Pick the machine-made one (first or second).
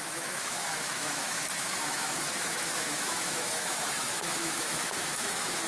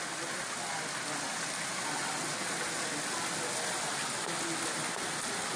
first